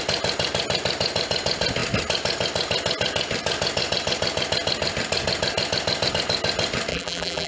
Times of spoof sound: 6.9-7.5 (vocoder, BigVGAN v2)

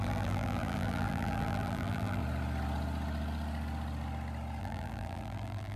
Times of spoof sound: 0.0-2.2 (vocoder, BigVGAN v2); 4.6-5.8

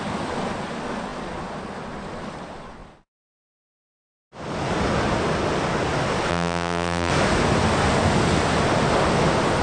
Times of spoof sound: 6.3-7.1 (vocoder, BigVGAN v2)

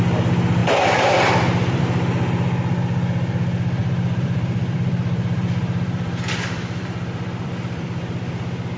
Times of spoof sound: 0.6-1.8 (vocoder, BigVGAN v2); 3.8-8.4

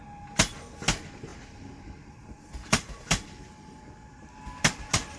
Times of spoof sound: 1.3-3.8 (vocoder, BigVGAN v2)